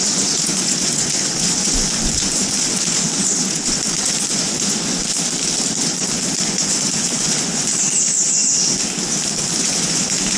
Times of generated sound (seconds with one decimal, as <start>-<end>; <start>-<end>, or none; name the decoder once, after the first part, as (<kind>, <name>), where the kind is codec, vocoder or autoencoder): 0.0-5.0 (vocoder, Vocos); 5.8-7.7; 9.5-10.4